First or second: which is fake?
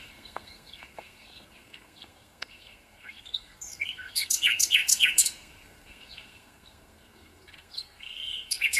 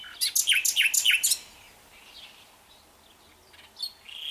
first